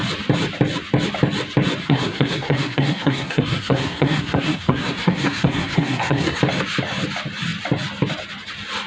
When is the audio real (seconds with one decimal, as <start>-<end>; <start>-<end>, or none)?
0.0-1.8; 6.4-8.9